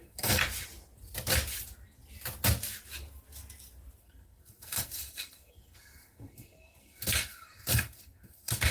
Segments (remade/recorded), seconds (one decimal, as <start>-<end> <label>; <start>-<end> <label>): 0.0-0.4 remade; 0.4-4.0 recorded; 4.0-8.7 remade